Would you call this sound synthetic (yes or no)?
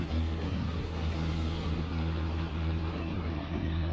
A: yes